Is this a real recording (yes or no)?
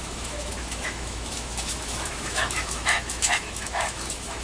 no